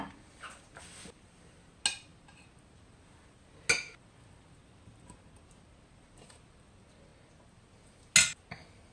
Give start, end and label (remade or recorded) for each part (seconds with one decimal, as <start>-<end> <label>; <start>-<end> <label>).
0.0-8.9 recorded